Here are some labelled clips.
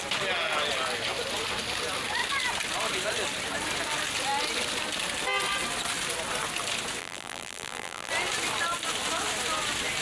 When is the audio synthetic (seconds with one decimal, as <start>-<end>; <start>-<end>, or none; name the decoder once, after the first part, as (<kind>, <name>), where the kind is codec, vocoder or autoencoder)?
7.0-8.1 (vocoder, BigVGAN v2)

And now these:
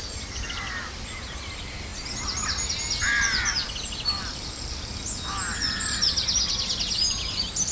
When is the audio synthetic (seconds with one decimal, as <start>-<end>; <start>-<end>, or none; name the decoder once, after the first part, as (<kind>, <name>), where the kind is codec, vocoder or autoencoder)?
none

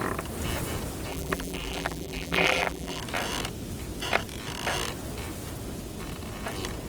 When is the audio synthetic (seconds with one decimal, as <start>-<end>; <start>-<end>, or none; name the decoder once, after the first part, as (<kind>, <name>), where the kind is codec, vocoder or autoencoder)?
1.1-3.0 (vocoder, BigVGAN v2)

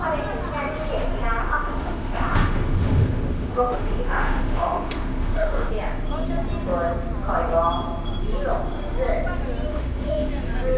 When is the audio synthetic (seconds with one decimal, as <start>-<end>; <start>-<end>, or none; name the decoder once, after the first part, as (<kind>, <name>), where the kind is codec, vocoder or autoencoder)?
1.4-5.7 (autoencoder, DAC-VAE); 9.7-10.3

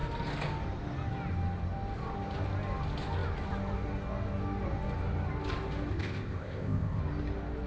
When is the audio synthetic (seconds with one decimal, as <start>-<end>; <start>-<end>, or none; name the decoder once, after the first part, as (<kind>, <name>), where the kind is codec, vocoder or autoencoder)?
5.9-7.0 (codec, ZipCodec)

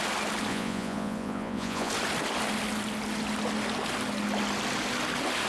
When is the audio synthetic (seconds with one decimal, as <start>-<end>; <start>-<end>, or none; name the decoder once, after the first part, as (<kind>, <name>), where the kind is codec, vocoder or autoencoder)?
0.5-1.9 (vocoder, Vocos)